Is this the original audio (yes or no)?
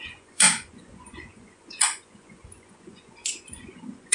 no